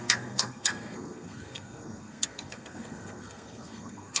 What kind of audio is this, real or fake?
fake